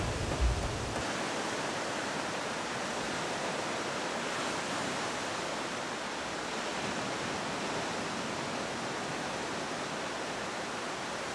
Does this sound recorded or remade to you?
recorded